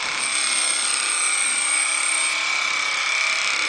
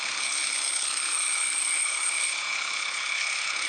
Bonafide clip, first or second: first